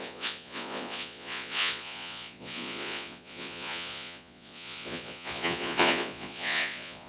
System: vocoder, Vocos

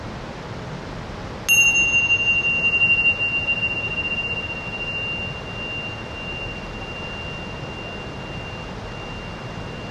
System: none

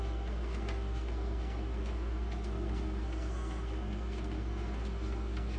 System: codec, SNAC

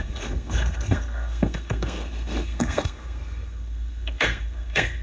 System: codec, SNAC